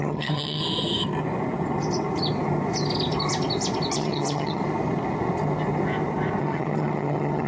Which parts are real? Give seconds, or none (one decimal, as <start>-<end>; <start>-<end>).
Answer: 0.6-3.9; 4.6-6.4